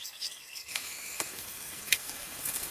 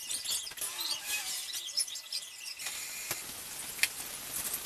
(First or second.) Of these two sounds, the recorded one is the second